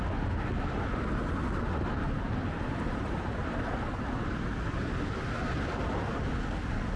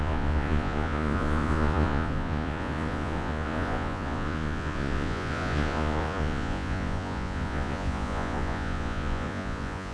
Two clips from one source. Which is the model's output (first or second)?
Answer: second